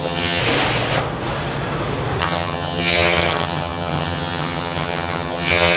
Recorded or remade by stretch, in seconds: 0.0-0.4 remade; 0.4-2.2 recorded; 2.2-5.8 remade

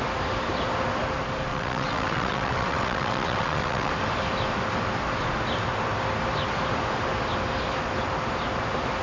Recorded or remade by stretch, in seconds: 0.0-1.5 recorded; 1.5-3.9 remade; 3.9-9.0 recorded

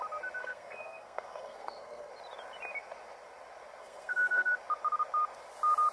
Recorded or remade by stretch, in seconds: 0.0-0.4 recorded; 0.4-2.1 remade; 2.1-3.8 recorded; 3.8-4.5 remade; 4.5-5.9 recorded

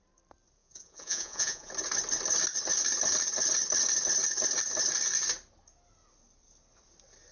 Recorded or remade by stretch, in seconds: 0.0-0.6 recorded; 0.6-1.7 remade; 1.7-7.3 recorded

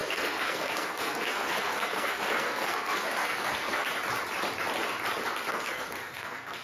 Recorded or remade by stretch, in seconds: 0.0-3.9 remade; 3.9-5.5 recorded; 5.5-6.6 remade

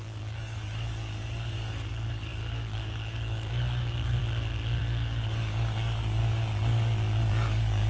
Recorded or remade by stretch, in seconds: 0.0-4.2 remade; 4.2-4.8 recorded; 4.8-6.2 remade; 6.2-7.3 recorded; 7.3-7.9 remade

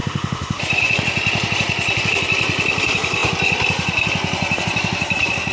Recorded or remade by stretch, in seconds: 0.0-0.6 remade; 0.6-5.5 recorded